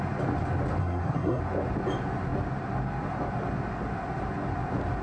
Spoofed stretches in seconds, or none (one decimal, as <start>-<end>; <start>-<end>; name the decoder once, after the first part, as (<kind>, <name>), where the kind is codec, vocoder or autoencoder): 0.8-1.4 (codec, SNAC)